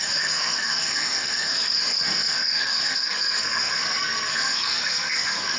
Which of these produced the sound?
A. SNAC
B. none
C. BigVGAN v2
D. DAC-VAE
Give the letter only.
A